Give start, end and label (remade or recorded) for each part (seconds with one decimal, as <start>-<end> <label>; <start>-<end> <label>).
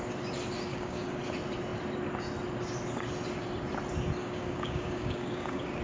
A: 0.0-0.7 recorded; 0.7-1.2 remade; 1.2-4.2 recorded; 4.2-5.8 remade